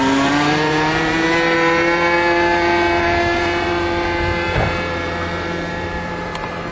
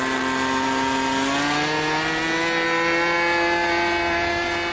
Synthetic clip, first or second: first